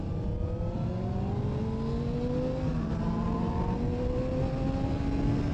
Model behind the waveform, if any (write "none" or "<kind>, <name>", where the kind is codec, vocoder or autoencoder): none